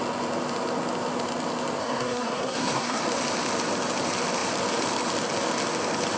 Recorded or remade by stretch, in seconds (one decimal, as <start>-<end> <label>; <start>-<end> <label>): 0.0-1.8 recorded; 1.8-3.0 remade; 3.0-6.2 recorded

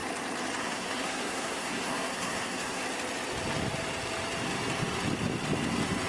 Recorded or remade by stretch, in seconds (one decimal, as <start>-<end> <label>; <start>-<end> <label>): 0.0-0.6 recorded; 0.6-2.8 remade; 2.8-6.1 recorded

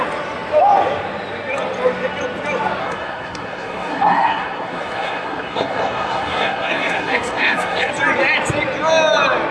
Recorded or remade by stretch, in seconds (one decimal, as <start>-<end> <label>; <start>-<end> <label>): 0.0-2.8 recorded; 2.8-7.9 remade; 7.9-9.5 recorded

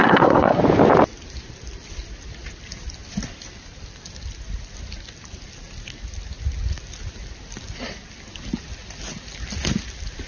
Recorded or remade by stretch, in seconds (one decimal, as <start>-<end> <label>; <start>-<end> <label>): 0.0-0.6 remade; 0.6-10.3 recorded